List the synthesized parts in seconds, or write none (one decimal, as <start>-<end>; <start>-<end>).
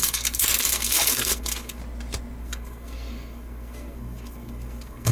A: 0.0-1.8; 2.4-5.1